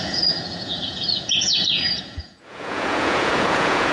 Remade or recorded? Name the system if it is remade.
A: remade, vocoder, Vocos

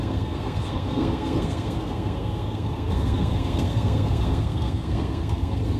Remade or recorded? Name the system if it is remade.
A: remade, codec, SNAC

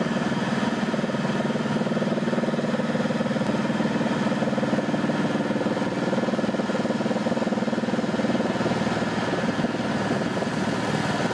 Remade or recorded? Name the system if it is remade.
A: recorded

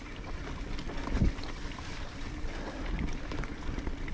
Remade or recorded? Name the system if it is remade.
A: recorded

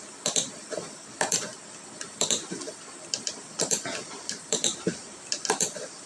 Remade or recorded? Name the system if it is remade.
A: remade, vocoder, BigVGAN v2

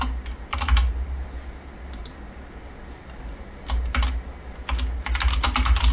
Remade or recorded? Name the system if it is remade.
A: recorded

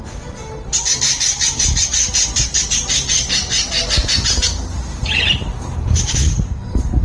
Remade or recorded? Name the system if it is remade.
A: remade, vocoder, BigVGAN v2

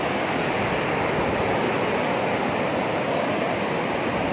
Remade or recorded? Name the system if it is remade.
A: recorded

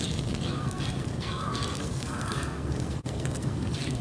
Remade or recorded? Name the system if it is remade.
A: remade, codec, SNAC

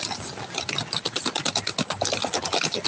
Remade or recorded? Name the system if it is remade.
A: recorded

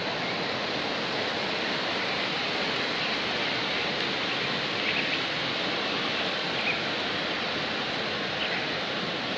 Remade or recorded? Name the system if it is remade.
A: recorded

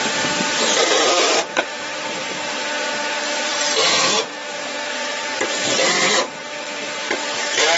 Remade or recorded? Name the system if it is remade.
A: remade, vocoder, BigVGAN v2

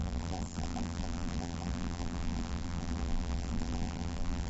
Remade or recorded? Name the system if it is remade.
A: remade, vocoder, BigVGAN v2